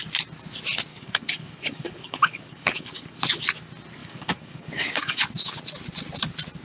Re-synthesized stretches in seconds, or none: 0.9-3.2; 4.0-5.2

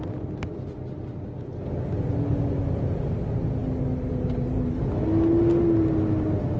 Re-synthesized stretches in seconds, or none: none

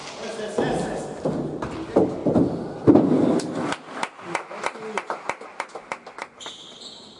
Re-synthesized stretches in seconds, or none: none

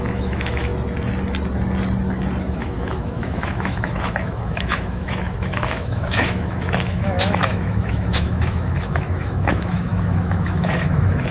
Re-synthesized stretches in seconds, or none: 0.0-0.7; 2.4-11.3

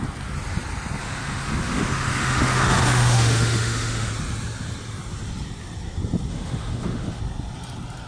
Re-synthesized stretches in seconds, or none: 1.0-4.1; 6.3-7.2

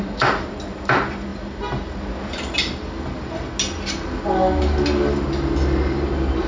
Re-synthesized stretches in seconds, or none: none